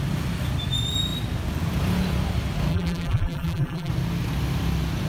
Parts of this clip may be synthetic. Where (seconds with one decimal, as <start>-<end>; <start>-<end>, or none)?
2.7-3.9